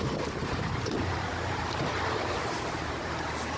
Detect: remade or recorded remade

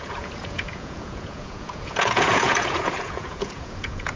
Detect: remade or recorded remade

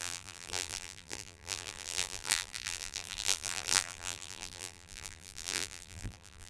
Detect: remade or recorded remade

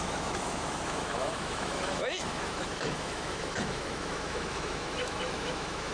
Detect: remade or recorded remade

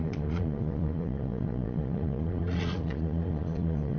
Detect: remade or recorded remade